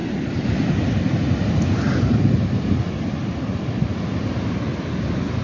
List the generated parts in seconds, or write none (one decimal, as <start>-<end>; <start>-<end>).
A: none